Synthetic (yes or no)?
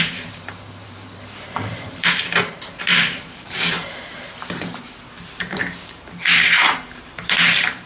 yes